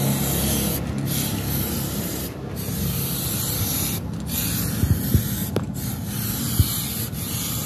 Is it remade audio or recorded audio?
recorded